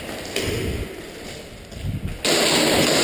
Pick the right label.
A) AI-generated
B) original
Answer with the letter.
B